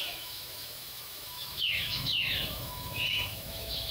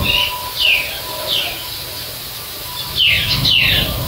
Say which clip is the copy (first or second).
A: first